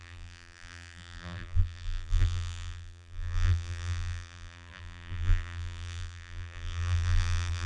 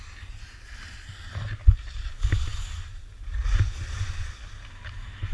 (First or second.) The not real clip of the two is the first